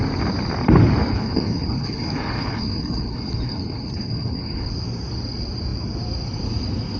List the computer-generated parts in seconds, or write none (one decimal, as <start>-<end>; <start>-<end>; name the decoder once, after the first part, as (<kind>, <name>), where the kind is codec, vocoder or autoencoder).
1.1-4.7 (codec, HILCodec)